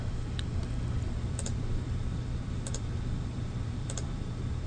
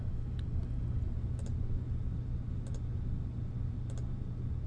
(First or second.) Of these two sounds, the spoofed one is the first